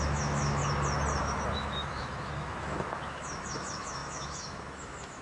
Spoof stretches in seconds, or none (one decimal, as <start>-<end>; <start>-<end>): 0.0-0.6; 1.2-5.2